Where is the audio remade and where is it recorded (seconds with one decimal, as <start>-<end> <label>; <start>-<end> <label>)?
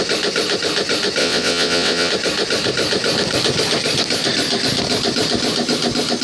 0.0-1.2 recorded; 1.2-2.1 remade; 2.1-6.2 recorded